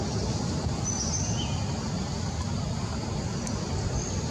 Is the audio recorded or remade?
recorded